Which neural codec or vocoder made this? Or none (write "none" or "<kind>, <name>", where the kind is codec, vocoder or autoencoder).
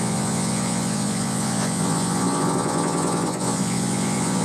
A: vocoder, Vocos